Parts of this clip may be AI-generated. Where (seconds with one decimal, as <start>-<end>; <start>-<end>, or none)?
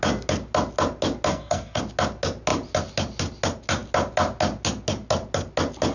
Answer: 1.3-1.8